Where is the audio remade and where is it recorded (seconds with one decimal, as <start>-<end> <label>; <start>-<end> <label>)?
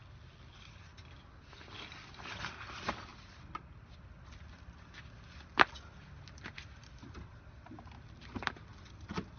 0.0-3.1 recorded; 3.1-3.7 remade; 3.7-6.8 recorded; 6.8-9.4 remade